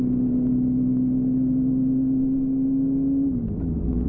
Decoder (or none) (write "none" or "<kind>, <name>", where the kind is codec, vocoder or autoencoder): none